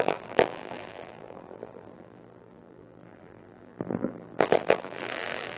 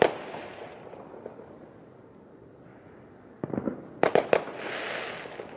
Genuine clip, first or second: second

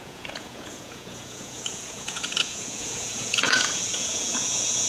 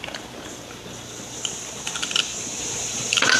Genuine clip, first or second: second